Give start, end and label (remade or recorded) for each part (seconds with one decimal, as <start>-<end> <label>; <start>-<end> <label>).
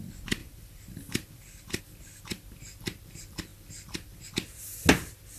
0.0-0.4 recorded; 0.4-1.8 remade; 1.8-5.4 recorded